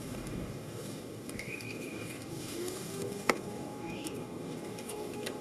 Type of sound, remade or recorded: remade